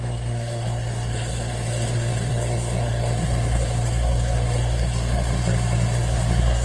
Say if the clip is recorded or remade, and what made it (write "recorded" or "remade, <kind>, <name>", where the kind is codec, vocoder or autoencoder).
remade, codec, SNAC